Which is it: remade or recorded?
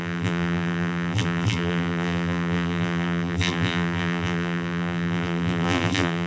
remade